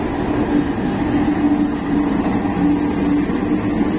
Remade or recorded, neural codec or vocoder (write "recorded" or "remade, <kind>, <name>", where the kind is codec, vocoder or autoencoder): recorded